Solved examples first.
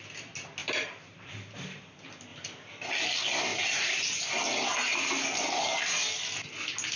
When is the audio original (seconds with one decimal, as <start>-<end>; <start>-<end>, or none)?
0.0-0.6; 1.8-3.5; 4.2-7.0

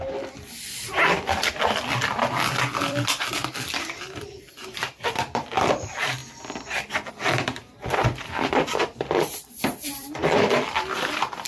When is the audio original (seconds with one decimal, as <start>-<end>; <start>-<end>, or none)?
6.2-7.1

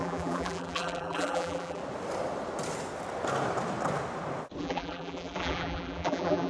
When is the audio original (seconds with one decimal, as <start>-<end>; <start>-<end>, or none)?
1.8-4.6

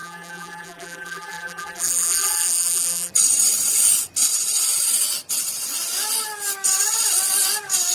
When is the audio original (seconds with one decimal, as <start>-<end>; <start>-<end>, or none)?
3.1-7.9

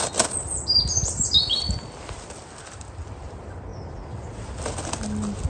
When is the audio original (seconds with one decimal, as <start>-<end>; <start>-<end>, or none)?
0.0-5.5

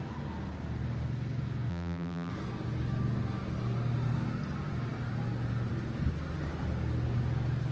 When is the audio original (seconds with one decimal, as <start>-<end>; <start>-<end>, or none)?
0.0-1.7; 2.3-7.7